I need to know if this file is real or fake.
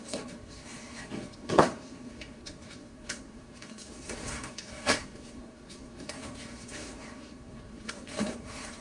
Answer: fake